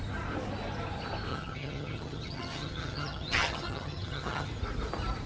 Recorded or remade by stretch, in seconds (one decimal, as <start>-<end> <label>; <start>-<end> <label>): 0.0-1.3 recorded; 1.3-4.5 remade; 4.5-5.3 recorded

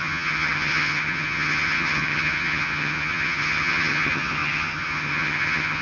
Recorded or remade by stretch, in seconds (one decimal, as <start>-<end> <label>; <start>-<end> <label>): 0.0-5.8 remade

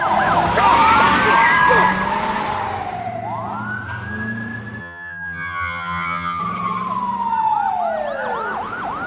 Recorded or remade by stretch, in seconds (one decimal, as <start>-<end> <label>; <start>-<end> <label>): 0.0-4.8 recorded; 4.8-6.4 remade; 6.4-9.1 recorded

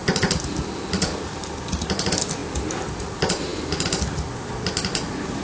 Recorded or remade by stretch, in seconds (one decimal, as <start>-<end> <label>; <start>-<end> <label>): 0.0-5.4 recorded

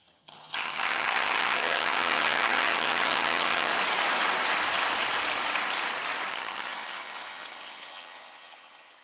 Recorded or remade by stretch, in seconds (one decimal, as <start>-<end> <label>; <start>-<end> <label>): 0.0-3.7 remade; 3.7-6.3 recorded; 6.3-9.0 remade

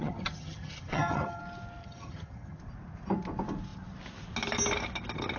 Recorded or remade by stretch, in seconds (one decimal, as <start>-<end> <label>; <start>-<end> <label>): 0.0-1.4 remade; 1.4-1.8 recorded; 1.8-2.6 remade; 2.6-5.4 recorded

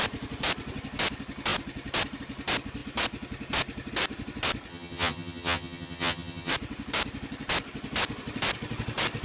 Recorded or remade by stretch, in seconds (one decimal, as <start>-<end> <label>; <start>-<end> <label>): 0.0-4.7 recorded; 4.7-6.5 remade; 6.5-9.2 recorded

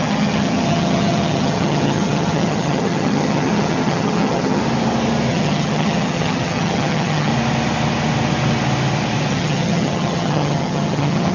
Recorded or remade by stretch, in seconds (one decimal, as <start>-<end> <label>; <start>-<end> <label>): 0.0-4.6 remade; 4.6-5.3 recorded; 5.3-7.3 remade; 7.3-9.3 recorded; 9.3-11.3 remade